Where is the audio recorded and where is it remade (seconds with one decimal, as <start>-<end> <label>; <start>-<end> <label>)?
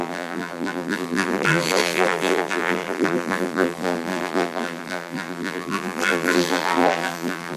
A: 0.0-7.6 remade